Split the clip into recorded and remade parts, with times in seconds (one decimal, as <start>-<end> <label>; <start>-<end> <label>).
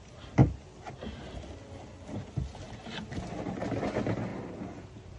0.0-5.2 recorded